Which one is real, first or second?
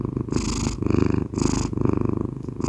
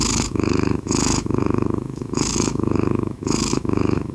first